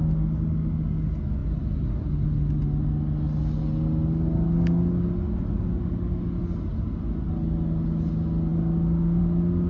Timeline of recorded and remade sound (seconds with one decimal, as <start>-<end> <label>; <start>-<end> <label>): 0.0-9.7 recorded